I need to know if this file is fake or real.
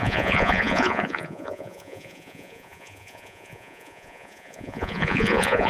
fake